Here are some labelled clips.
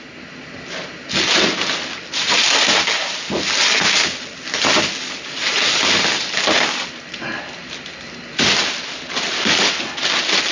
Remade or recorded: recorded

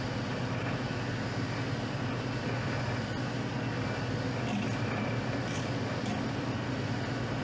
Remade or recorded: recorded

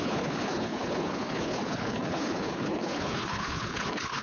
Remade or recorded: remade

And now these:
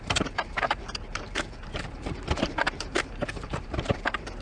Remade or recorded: remade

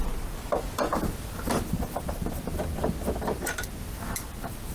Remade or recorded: recorded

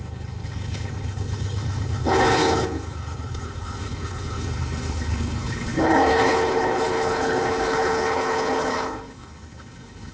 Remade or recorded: remade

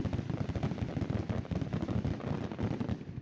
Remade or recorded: recorded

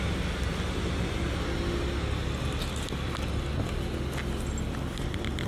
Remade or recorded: recorded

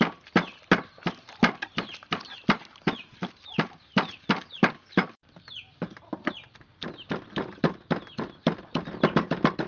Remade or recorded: recorded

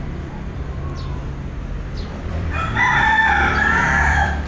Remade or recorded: remade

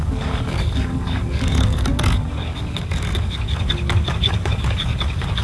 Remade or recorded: remade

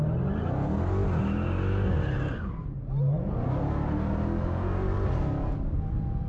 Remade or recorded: recorded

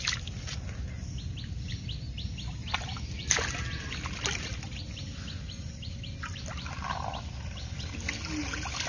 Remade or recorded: recorded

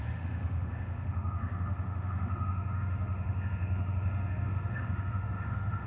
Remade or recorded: remade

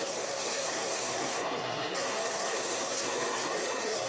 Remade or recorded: remade